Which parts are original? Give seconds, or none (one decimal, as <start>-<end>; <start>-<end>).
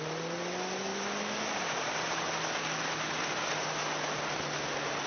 0.0-5.1